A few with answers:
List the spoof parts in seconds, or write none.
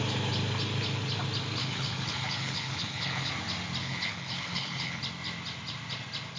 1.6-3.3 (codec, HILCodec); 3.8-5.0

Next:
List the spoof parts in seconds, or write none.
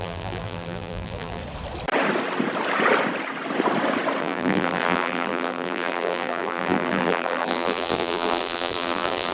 0.0-1.4 (vocoder, BigVGAN v2); 4.2-9.3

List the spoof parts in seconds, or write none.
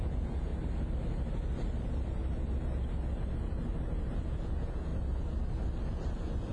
0.0-0.5 (vocoder, Vocos); 4.1-4.9; 5.8-6.5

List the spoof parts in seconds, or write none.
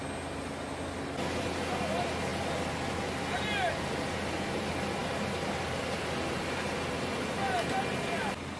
none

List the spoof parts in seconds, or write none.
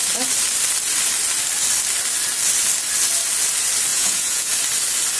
3.9-4.5 (vocoder, Vocos)